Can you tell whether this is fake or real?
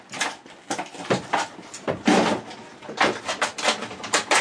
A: real